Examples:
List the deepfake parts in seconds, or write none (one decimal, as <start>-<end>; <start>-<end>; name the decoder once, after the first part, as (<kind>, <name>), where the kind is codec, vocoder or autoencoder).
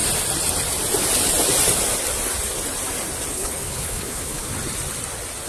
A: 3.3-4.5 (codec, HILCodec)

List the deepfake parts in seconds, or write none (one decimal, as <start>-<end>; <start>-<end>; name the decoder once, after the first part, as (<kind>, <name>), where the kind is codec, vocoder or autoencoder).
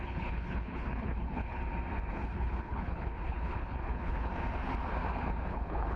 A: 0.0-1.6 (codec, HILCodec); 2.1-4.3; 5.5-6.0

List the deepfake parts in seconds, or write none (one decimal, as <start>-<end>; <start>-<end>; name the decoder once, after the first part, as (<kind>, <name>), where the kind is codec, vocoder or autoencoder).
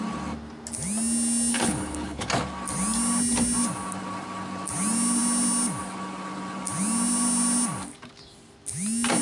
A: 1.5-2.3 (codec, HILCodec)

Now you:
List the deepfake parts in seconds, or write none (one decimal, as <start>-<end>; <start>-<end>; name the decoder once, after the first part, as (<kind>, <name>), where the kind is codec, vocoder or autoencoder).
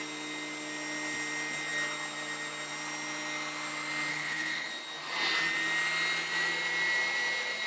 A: 4.1-4.7 (codec, HILCodec)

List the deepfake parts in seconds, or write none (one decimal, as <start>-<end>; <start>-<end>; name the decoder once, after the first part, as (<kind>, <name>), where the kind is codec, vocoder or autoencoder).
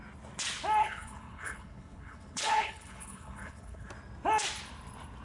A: 0.8-3.9 (codec, HILCodec)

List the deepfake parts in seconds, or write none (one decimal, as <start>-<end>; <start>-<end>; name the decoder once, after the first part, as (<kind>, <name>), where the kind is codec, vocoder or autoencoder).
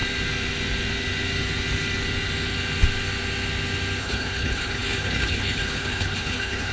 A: 4.0-6.7 (codec, HILCodec)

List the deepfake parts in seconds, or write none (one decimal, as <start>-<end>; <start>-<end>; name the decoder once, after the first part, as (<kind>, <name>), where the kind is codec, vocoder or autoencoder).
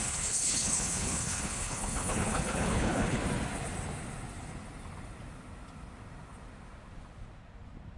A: 0.0-3.2 (codec, HILCodec)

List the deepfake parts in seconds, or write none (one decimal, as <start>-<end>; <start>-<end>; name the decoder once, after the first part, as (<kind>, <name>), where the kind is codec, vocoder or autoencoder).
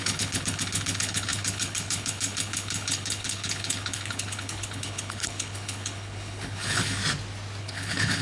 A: 0.0-7.0 (codec, HILCodec); 7.6-8.2